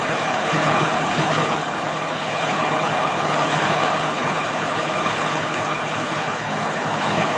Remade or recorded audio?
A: remade